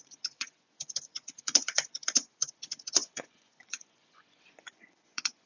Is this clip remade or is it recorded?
remade